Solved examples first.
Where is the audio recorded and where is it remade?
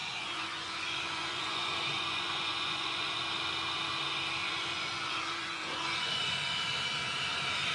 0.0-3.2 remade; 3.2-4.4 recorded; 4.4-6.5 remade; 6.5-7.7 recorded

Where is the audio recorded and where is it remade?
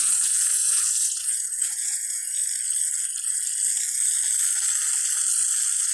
0.0-2.4 remade; 2.4-5.9 recorded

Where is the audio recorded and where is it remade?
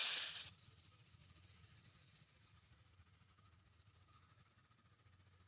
0.0-0.6 remade; 0.6-1.2 recorded; 1.2-4.5 remade; 4.5-5.5 recorded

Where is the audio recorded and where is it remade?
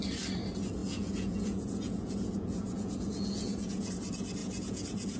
0.0-0.8 recorded; 0.8-3.9 remade; 3.9-4.4 recorded; 4.4-5.2 remade